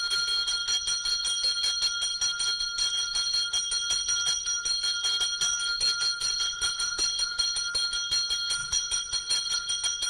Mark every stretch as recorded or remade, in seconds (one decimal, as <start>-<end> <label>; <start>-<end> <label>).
0.0-6.2 recorded; 6.2-7.4 remade; 7.4-8.6 recorded; 8.6-9.7 remade; 9.7-10.1 recorded